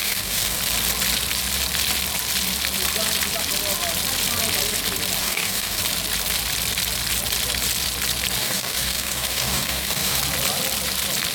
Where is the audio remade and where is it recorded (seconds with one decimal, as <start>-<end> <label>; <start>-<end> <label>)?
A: 0.0-0.6 remade; 0.6-5.2 recorded; 5.2-5.8 remade; 5.8-8.4 recorded; 8.4-10.2 remade; 10.2-11.3 recorded

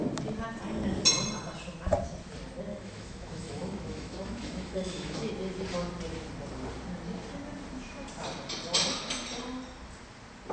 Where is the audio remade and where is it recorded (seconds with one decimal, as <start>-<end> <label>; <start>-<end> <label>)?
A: 0.0-2.7 recorded; 2.7-5.3 remade; 5.3-10.5 recorded

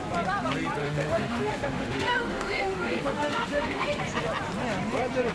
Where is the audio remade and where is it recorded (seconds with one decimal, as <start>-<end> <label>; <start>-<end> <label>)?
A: 0.0-0.8 recorded; 0.8-4.0 remade; 4.0-5.3 recorded